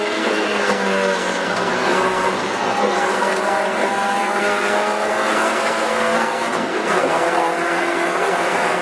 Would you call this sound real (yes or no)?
no